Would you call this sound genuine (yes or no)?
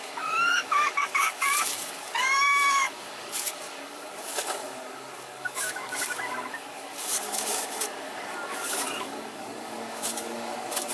no